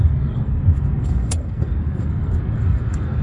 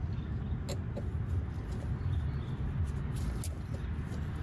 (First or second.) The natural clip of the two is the second